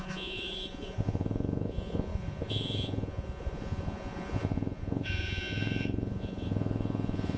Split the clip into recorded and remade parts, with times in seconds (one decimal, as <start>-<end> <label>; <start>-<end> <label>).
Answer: 0.0-7.4 remade